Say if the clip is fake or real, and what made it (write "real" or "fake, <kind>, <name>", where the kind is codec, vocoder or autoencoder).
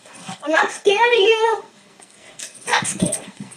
fake, codec, SNAC